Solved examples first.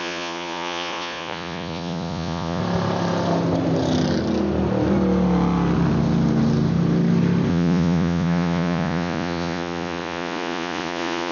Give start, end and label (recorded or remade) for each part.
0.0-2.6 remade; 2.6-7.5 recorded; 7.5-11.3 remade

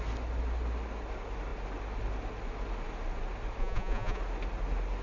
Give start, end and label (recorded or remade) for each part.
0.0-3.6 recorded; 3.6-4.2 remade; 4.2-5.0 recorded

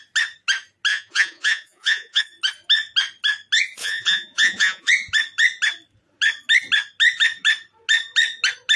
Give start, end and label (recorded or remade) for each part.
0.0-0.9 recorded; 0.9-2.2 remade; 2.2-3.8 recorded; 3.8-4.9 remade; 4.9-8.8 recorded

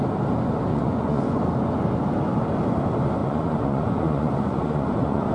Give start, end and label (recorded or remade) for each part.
0.0-0.7 recorded; 0.7-1.4 remade; 1.4-3.2 recorded; 3.2-5.3 remade

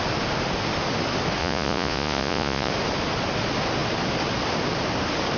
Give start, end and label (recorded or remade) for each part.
0.0-1.4 recorded; 1.4-2.7 remade; 2.7-5.4 recorded

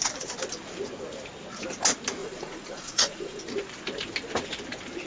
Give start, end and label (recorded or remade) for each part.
0.0-2.2 recorded; 2.2-3.4 remade; 3.4-5.1 recorded